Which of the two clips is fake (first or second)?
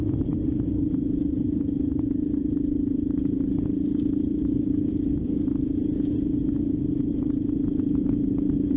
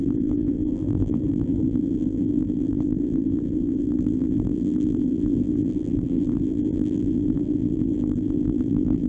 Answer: second